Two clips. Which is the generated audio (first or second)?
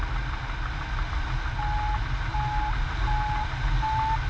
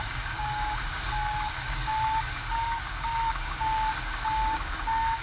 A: second